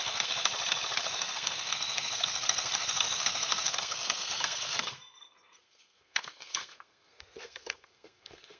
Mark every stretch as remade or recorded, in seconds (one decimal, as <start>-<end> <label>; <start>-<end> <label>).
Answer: 0.0-0.5 remade; 0.5-1.0 recorded; 1.0-8.6 remade